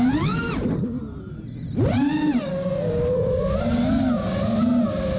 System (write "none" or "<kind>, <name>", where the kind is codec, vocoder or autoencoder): none